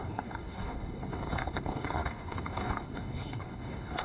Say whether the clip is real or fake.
fake